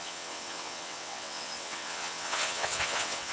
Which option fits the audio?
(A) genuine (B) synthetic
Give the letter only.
B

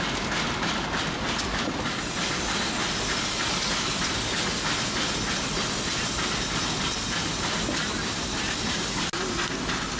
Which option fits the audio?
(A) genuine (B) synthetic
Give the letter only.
A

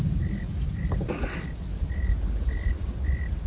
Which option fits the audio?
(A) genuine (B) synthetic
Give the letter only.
A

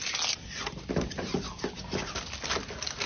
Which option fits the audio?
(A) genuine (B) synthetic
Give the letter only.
A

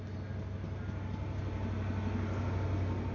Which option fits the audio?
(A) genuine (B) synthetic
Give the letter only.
A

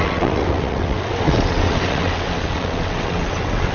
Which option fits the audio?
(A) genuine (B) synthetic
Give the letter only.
B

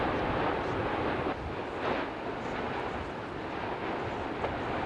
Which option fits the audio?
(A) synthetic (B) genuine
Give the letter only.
B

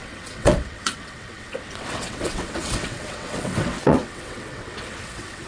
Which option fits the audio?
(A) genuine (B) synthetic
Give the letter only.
B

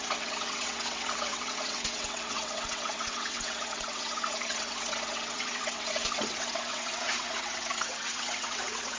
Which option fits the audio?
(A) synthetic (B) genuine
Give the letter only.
A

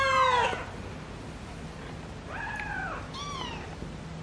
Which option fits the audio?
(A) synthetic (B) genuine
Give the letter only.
B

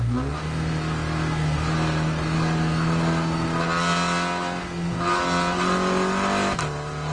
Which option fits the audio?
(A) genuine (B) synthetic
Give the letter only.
A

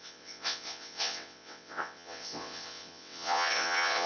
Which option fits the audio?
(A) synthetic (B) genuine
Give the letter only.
A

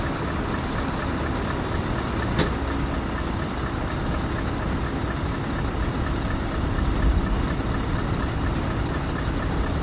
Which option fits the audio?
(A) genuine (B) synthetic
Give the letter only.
A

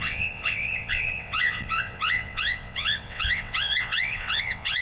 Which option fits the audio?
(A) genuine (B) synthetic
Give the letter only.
B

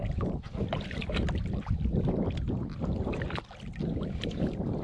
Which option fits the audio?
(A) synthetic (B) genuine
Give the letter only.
B